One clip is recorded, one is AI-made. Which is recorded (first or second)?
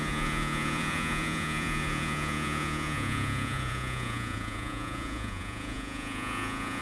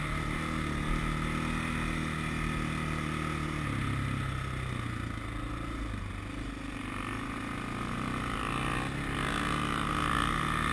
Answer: second